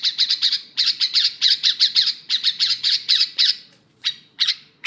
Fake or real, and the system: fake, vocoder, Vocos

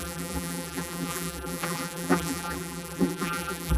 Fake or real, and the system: fake, vocoder, BigVGAN v2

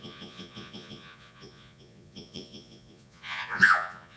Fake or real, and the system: fake, vocoder, Vocos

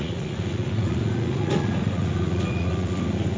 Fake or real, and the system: fake, vocoder, Vocos